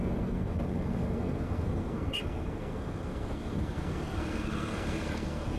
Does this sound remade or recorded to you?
remade